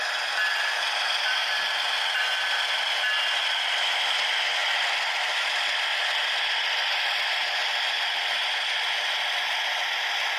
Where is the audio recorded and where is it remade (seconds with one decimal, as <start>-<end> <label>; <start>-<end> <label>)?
0.0-4.6 recorded; 4.6-5.3 remade; 5.3-7.4 recorded; 7.4-8.7 remade; 8.7-10.4 recorded

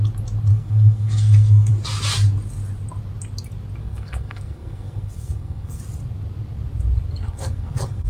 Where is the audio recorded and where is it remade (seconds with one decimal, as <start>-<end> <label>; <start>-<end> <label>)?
0.0-0.5 recorded; 0.5-1.7 remade; 1.7-3.8 recorded; 3.8-5.8 remade; 5.8-7.2 recorded; 7.2-8.1 remade

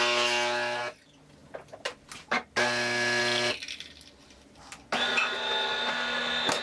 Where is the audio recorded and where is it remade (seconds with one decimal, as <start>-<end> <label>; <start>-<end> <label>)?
0.0-6.6 recorded

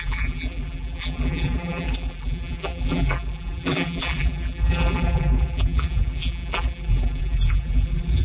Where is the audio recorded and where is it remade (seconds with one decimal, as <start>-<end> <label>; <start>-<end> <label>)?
0.0-8.2 remade

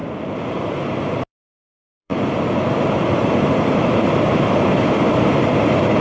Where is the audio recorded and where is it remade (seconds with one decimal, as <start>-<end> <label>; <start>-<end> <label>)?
0.0-6.0 remade